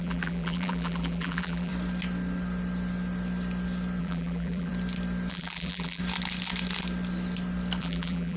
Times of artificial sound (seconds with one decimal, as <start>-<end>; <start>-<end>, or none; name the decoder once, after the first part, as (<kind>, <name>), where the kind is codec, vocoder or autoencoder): 0.0-1.7 (vocoder, BigVGAN v2); 4.0-4.7; 5.3-6.0; 7.8-8.4